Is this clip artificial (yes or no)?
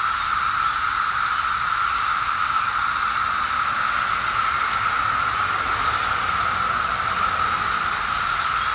no